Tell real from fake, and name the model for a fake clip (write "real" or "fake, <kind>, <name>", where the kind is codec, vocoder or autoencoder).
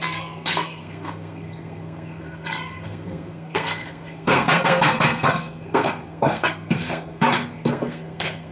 fake, codec, SNAC